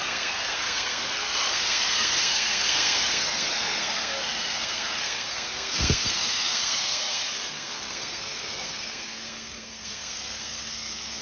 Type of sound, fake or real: fake